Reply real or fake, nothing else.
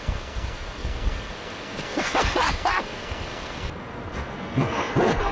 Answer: fake